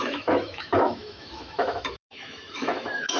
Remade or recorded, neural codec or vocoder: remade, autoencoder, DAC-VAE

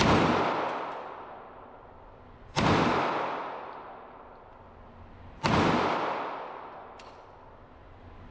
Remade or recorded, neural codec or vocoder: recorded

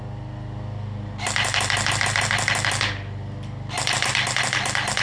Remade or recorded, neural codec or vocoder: recorded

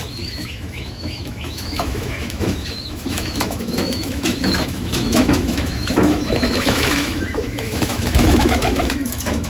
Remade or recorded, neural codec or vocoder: remade, autoencoder, DAC-VAE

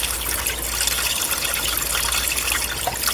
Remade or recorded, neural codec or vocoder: recorded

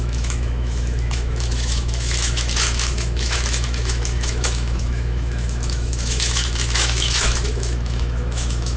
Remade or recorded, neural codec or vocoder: remade, autoencoder, DAC-VAE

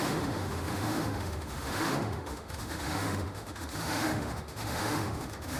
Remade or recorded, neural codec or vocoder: remade, autoencoder, DAC-VAE